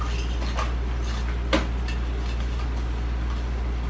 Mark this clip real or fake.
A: real